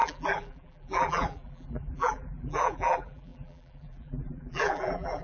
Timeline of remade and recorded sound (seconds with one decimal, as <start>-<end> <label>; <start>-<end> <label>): 0.0-5.2 remade